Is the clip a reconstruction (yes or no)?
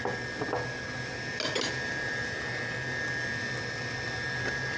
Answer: no